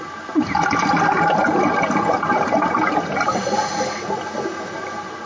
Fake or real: real